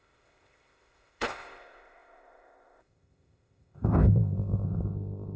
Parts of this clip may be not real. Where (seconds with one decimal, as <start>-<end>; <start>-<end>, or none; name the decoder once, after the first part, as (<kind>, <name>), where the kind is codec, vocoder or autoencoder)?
0.0-5.4 (codec, ZipCodec)